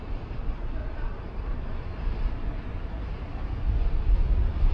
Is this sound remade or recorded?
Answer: recorded